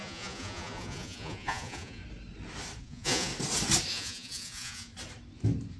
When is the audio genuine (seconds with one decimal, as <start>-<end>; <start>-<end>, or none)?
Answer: 2.0-2.8; 3.3-3.9; 4.9-5.8